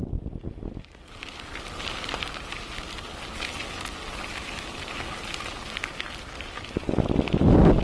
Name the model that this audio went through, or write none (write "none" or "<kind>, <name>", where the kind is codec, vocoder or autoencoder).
none